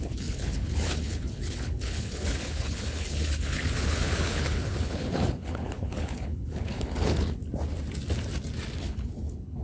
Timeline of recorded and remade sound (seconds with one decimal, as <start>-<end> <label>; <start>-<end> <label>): 0.0-7.4 remade; 7.4-8.8 recorded; 8.8-9.6 remade